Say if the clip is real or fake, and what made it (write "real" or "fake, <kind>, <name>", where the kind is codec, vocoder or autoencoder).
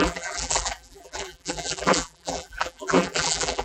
fake, vocoder, BigVGAN v2